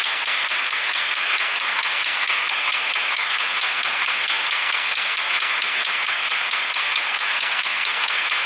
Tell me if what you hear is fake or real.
fake